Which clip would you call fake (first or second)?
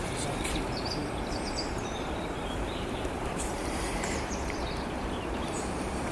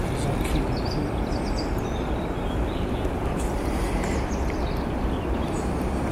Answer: first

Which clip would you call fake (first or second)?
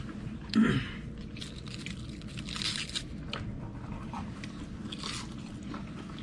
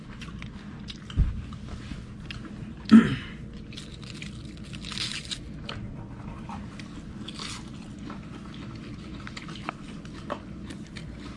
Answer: first